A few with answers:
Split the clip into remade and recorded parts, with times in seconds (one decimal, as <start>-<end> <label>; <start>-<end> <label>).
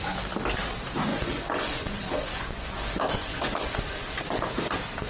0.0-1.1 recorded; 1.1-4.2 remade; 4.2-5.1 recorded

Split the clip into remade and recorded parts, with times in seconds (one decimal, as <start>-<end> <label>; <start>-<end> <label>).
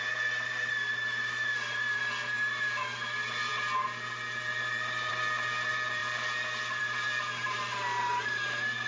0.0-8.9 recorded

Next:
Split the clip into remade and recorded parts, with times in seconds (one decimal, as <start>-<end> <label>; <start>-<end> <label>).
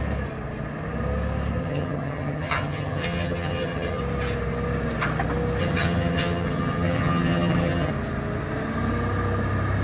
0.0-1.6 recorded; 1.6-4.0 remade; 4.0-5.6 recorded; 5.6-7.9 remade; 7.9-9.8 recorded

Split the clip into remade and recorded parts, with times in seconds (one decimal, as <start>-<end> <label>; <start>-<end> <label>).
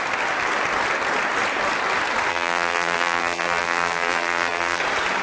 0.0-2.3 recorded; 2.3-4.8 remade; 4.8-5.2 recorded